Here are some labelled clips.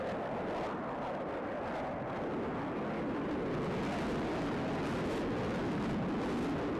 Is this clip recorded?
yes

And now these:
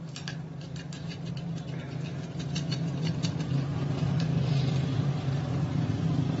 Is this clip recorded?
no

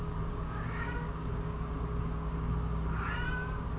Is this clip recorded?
no